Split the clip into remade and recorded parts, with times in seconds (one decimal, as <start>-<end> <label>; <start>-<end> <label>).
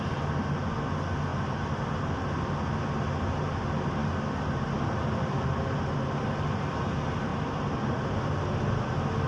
0.0-1.3 recorded; 1.3-2.2 remade; 2.2-7.3 recorded; 7.3-8.3 remade; 8.3-9.3 recorded